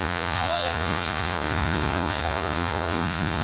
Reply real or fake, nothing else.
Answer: fake